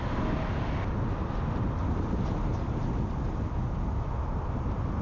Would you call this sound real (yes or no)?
yes